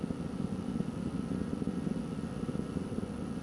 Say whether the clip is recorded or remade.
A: recorded